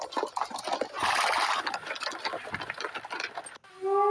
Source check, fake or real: real